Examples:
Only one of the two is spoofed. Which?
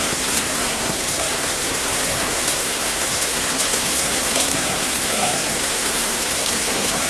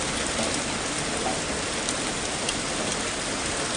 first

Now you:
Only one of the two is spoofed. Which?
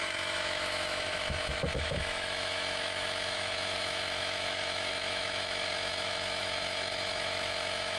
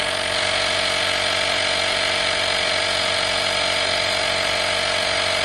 first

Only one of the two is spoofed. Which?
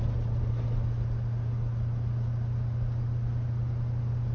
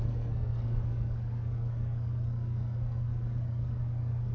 second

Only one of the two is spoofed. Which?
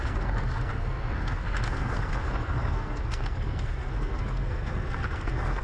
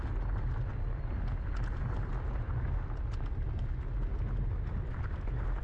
first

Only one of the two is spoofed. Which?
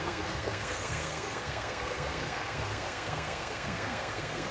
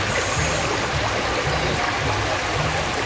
first